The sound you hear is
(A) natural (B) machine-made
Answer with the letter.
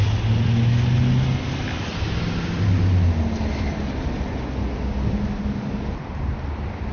A